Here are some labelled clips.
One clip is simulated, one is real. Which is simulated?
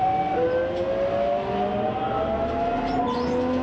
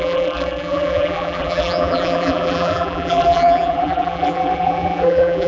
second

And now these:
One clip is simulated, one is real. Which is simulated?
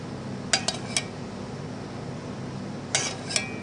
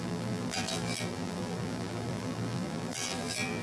second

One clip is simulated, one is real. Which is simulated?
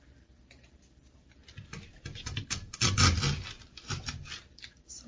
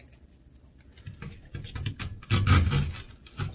first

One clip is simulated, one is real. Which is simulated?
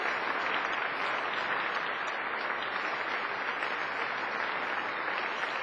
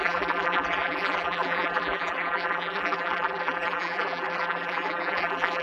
second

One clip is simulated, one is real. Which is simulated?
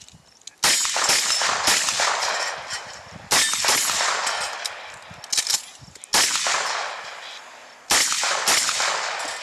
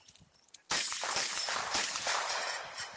second